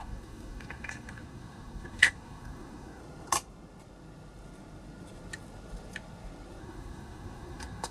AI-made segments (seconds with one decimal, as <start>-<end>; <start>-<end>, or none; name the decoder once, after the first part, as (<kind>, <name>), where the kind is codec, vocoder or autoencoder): 0.0-3.0 (codec, SNAC); 6.6-7.9